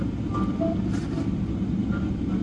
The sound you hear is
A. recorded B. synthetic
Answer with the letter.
A